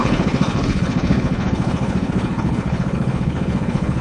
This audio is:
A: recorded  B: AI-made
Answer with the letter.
B